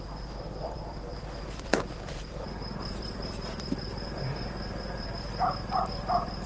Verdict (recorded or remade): remade